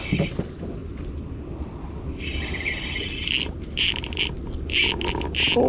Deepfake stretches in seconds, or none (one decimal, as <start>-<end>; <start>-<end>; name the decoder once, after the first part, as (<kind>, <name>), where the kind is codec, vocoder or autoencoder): none